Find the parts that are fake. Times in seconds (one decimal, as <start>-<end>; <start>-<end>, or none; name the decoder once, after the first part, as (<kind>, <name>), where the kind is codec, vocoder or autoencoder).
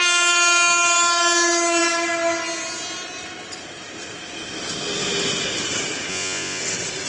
6.1-6.6 (vocoder, Vocos)